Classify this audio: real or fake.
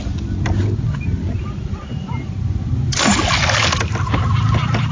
real